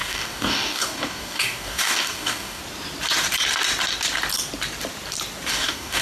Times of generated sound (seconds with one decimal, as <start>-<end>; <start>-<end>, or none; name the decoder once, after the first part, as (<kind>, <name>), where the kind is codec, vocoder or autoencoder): 0.0-2.6 (codec, DAC); 5.5-6.0